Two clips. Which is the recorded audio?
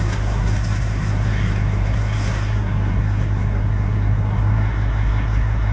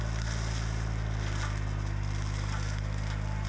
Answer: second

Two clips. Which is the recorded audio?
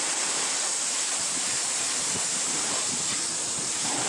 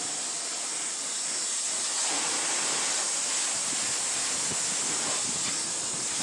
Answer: second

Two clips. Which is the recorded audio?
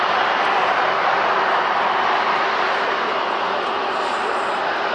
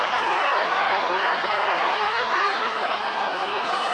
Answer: first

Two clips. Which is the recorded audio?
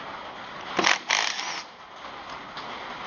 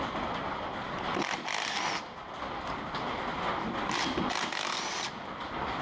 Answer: first